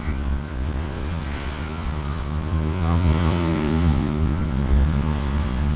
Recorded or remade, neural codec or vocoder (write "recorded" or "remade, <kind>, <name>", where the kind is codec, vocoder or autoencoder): remade, vocoder, Vocos